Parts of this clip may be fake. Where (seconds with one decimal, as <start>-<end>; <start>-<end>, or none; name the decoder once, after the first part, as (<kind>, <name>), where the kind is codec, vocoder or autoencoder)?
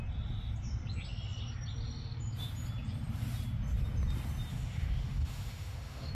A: 4.5-6.1 (autoencoder, DAC-VAE)